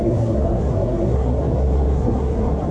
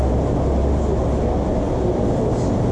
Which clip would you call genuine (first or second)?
second